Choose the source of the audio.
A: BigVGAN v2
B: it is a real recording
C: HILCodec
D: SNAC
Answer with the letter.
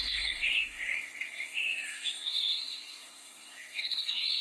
D